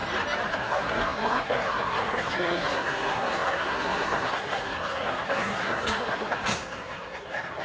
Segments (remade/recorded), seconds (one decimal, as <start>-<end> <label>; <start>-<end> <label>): 0.0-0.5 recorded; 0.5-7.6 remade